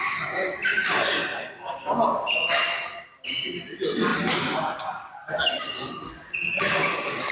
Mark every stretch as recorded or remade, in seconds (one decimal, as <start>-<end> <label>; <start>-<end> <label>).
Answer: 0.0-7.3 recorded